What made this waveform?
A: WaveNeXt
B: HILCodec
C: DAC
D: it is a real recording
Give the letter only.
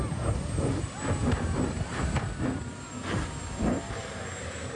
D